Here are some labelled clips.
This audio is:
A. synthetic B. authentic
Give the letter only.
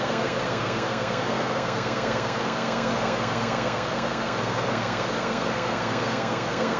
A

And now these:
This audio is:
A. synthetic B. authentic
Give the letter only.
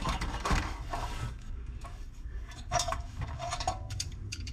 A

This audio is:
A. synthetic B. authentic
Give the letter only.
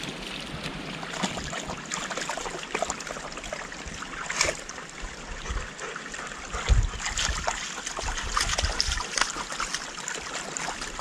B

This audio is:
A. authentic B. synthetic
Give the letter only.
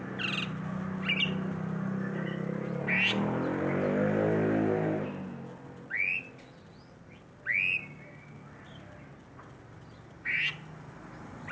A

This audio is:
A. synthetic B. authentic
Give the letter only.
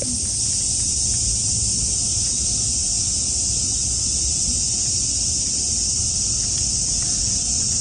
B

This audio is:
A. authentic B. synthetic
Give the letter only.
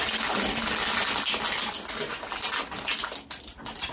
A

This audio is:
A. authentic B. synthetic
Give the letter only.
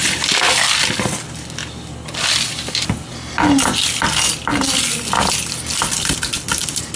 A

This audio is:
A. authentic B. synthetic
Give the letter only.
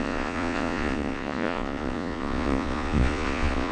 B